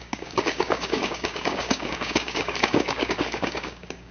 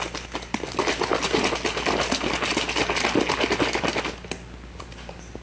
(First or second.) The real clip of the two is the second